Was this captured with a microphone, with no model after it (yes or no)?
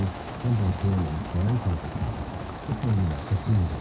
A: no